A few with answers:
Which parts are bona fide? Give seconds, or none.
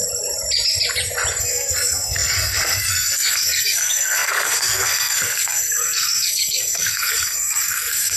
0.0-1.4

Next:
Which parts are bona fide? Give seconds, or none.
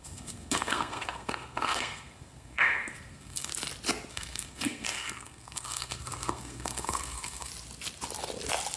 3.5-4.1; 7.5-8.8